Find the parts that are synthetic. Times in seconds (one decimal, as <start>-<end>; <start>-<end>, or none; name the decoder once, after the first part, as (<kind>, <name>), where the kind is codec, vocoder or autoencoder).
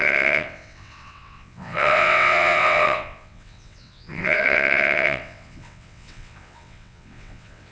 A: 0.0-7.7 (vocoder, WaveNeXt)